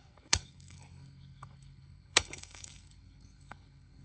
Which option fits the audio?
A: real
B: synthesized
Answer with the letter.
B